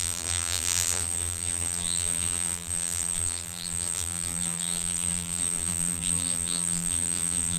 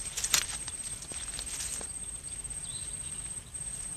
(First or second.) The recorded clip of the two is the second